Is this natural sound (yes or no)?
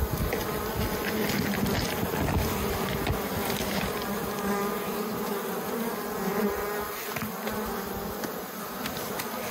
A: yes